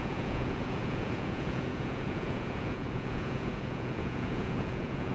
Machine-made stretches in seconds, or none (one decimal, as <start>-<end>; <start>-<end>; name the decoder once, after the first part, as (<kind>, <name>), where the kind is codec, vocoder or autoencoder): 0.0-5.1 (vocoder, Vocos)